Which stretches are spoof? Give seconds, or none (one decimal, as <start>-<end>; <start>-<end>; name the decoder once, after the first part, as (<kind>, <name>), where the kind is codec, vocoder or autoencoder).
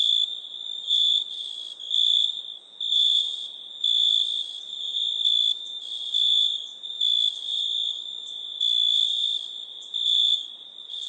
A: none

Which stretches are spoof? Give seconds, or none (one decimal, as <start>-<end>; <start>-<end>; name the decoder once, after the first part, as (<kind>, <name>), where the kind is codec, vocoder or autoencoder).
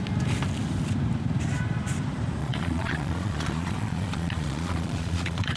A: 2.4-5.6 (vocoder, Vocos)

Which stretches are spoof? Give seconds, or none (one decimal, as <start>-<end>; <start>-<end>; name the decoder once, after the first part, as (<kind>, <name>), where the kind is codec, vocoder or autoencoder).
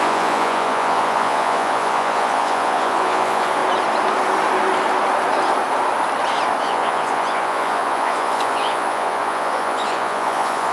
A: 0.0-3.6 (vocoder, Vocos); 6.6-10.7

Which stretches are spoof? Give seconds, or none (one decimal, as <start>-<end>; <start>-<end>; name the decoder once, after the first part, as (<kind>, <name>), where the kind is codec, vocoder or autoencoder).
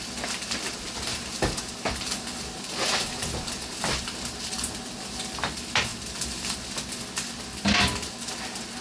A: none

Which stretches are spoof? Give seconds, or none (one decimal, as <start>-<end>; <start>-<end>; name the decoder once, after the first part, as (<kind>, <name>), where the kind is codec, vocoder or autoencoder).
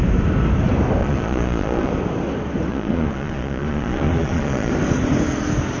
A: 1.0-1.9 (vocoder, Vocos); 2.7-4.7